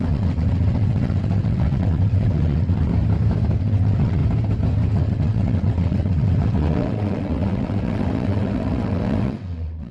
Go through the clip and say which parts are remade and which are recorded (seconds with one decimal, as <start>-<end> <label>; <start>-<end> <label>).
0.0-2.9 remade; 2.9-3.6 recorded; 3.6-4.2 remade; 4.2-4.9 recorded; 4.9-9.9 remade